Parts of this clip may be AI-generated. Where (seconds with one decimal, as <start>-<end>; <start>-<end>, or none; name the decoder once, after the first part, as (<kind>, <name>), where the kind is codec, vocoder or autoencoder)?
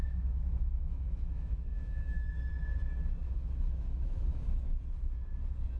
0.0-2.3 (autoencoder, DAC-VAE); 3.2-4.7